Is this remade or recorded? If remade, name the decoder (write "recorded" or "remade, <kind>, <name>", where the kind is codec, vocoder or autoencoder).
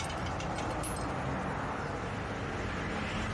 recorded